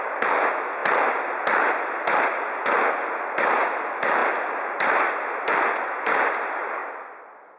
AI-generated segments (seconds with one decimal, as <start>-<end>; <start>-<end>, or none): none